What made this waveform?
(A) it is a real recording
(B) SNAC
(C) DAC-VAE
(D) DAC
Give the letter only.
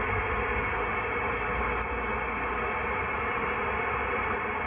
A